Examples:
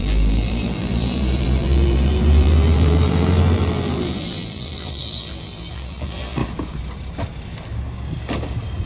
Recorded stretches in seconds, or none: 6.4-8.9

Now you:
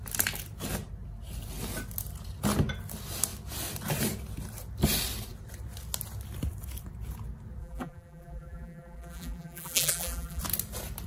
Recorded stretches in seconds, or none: 0.0-7.6; 10.4-11.1

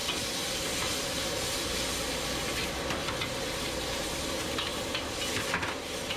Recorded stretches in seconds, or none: 0.0-6.2

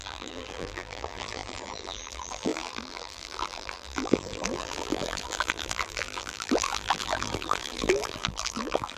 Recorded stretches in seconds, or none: none

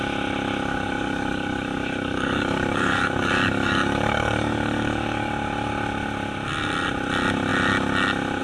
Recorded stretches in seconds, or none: 0.0-0.7; 5.3-8.4

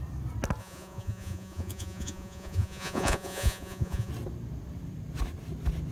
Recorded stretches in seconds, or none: 0.0-0.6; 4.1-5.9